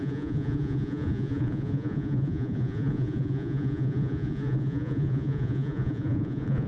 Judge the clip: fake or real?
fake